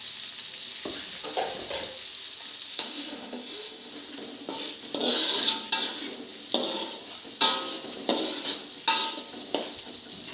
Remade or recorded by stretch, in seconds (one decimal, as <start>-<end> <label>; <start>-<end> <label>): 0.0-2.7 recorded; 2.7-3.9 remade; 3.9-10.3 recorded